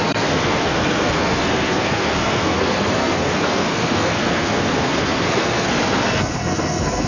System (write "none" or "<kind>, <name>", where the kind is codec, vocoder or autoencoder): codec, SNAC